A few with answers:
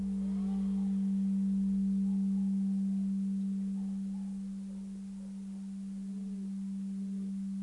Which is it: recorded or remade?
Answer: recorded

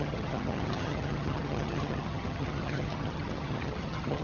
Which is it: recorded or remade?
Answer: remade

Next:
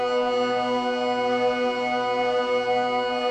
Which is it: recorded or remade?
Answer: recorded